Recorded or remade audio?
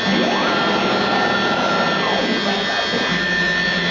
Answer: recorded